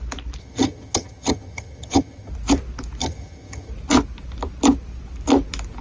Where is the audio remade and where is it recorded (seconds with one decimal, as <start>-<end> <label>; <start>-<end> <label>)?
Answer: 0.0-0.4 recorded; 0.4-2.3 remade; 2.3-3.0 recorded; 3.0-3.7 remade; 3.7-5.8 recorded